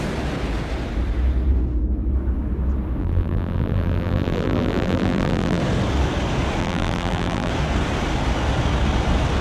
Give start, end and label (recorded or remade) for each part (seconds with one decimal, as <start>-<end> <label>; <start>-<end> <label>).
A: 0.0-3.0 recorded; 3.0-5.6 remade; 5.6-6.6 recorded; 6.6-7.5 remade; 7.5-9.4 recorded